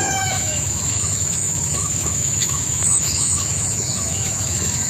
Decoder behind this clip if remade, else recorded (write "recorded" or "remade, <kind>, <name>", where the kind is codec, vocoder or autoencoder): remade, autoencoder, DAC-VAE